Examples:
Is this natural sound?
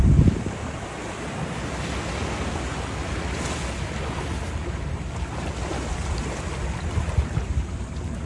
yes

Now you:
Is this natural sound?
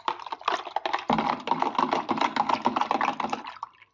yes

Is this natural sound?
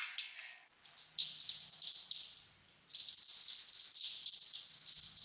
yes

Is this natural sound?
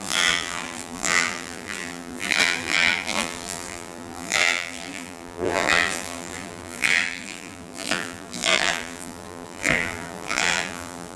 no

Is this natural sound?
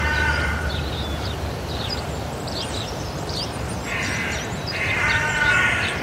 no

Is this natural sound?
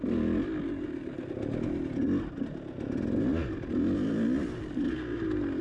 yes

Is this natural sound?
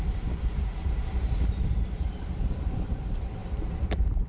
no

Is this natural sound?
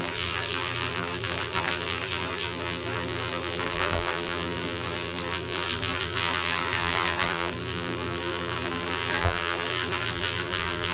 no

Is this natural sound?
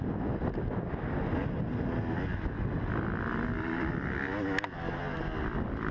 yes